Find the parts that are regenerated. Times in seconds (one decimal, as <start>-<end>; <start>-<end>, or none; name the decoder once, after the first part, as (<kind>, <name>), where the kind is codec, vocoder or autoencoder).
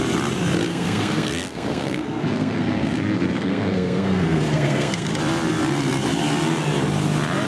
0.7-5.1 (codec, SNAC)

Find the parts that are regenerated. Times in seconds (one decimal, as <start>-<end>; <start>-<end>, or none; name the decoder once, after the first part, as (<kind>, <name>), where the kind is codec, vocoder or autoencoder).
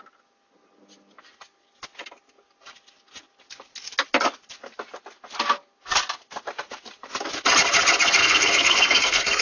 8.2-9.4 (codec, SNAC)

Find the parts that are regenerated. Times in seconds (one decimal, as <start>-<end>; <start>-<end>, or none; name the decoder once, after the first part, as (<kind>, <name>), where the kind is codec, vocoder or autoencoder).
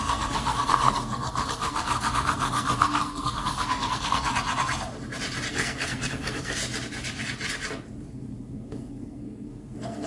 0.0-4.3 (codec, SNAC); 5.5-6.6; 8.1-10.1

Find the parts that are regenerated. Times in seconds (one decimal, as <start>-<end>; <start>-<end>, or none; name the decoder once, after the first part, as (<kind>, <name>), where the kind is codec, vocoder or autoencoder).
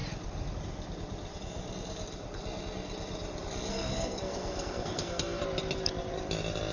3.7-5.4 (codec, SNAC)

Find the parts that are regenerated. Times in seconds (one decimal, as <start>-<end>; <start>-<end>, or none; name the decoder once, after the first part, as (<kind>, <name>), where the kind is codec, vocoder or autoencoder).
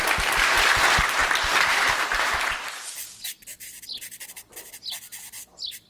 none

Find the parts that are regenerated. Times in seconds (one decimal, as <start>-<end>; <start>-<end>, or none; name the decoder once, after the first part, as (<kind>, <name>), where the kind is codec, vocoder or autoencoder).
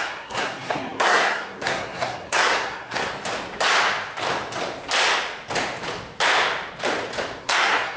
0.0-3.1 (codec, SNAC); 7.4-8.0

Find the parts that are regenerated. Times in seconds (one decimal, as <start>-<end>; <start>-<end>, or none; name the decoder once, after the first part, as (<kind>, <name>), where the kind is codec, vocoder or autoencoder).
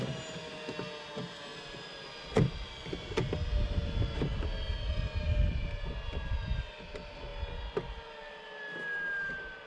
none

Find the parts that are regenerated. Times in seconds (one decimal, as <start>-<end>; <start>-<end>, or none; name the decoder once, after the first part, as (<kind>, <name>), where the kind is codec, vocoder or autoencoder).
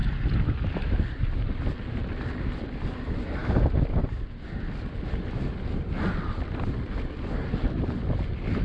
none